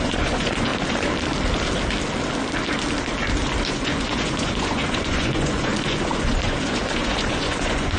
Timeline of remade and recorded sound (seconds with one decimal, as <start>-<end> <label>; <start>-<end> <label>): 0.0-0.7 remade; 0.7-3.7 recorded; 3.7-8.0 remade